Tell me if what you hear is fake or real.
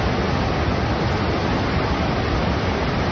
real